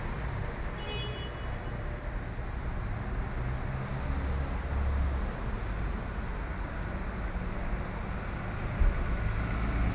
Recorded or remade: recorded